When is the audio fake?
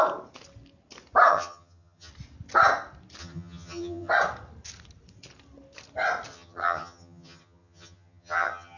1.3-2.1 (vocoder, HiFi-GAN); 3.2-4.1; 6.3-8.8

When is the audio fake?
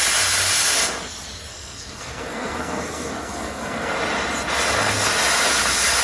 1.5-3.9 (codec, SNAC)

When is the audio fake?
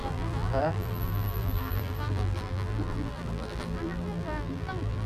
0.0-5.1 (vocoder, BigVGAN v2)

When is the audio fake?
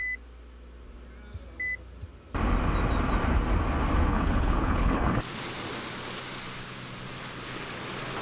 4.1-5.2 (codec, HILCodec)